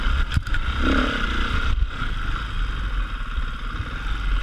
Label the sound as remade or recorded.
recorded